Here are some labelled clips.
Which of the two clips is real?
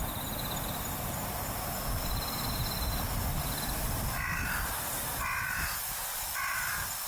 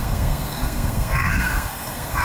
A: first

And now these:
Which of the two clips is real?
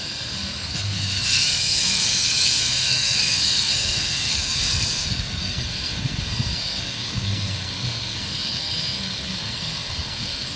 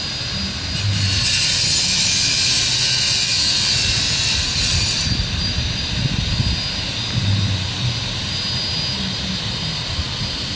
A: second